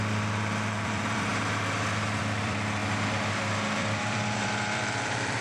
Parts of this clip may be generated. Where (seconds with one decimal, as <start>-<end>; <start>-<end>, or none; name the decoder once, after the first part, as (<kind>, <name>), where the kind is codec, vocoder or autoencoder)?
0.0-2.8 (vocoder, BigVGAN v2); 3.8-5.4